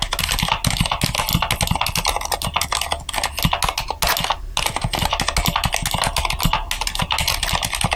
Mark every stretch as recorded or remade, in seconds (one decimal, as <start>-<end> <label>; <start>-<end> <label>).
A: 0.0-8.0 recorded